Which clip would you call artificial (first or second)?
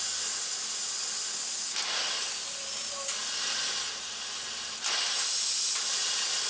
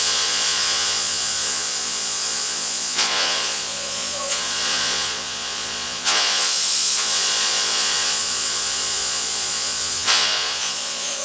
second